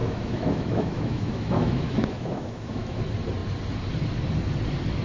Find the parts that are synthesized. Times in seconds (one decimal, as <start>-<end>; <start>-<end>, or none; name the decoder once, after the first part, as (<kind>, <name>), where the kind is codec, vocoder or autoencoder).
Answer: 0.0-3.0 (autoencoder, DAC-VAE)